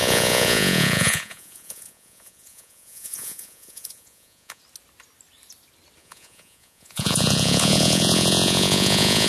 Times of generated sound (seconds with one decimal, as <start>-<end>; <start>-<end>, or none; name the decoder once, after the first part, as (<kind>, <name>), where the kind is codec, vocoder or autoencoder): 0.0-4.6 (vocoder, Vocos); 6.0-9.3